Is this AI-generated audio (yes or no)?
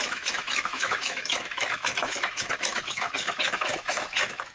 yes